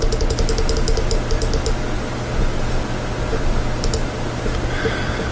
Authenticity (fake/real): real